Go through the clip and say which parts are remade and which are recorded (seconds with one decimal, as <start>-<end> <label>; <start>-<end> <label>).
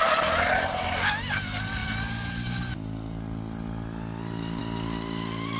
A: 0.0-5.6 recorded